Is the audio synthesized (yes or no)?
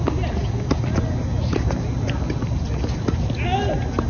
no